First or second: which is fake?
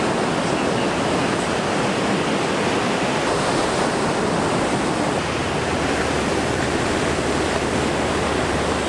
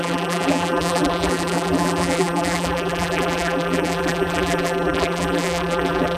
second